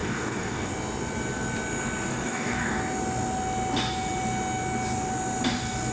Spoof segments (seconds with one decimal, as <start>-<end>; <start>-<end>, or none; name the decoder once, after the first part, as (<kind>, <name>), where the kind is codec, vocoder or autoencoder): 0.0-0.7 (codec, DAC); 2.1-2.8